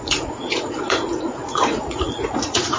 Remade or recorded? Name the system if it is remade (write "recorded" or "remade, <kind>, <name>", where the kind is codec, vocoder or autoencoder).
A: remade, vocoder, Vocos